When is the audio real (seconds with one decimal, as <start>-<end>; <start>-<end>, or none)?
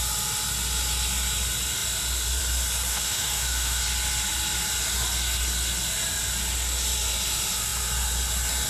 0.0-2.9; 3.8-8.7